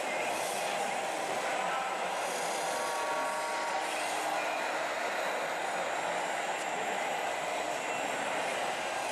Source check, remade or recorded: recorded